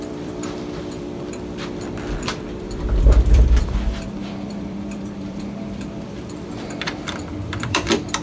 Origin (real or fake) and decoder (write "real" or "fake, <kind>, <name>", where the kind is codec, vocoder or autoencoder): fake, vocoder, BigVGAN v2